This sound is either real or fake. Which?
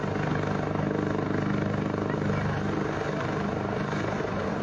real